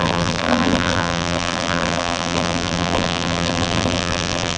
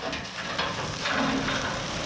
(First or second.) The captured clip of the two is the second